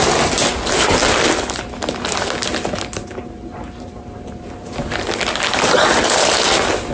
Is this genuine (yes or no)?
yes